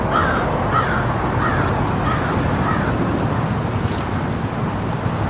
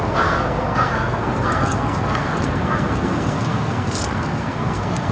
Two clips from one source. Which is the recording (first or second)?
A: first